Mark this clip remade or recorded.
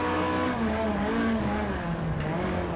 remade